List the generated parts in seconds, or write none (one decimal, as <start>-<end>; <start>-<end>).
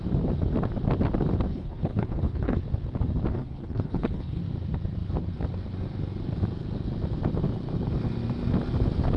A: 1.5-2.6; 3.3-4.4